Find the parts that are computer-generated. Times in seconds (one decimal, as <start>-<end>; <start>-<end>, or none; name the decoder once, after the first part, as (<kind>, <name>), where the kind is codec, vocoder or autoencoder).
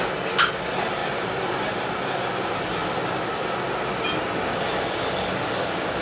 1.0-1.8 (vocoder, BigVGAN v2)